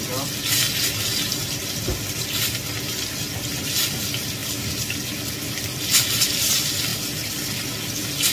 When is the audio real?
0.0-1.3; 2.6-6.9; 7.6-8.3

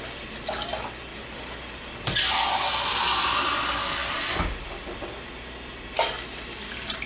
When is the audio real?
0.0-7.1

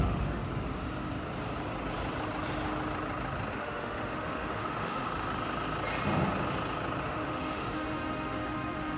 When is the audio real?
0.4-3.5; 5.1-7.0

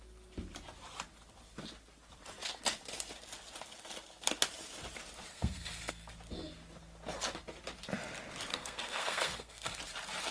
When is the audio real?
0.0-5.3; 6.1-8.5; 9.8-10.3

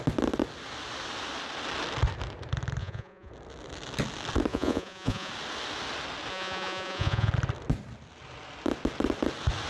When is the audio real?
0.0-2.8; 3.3-4.5; 5.3-6.3; 7.3-9.7